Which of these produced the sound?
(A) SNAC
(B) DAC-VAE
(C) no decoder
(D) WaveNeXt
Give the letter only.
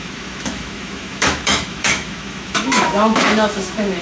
B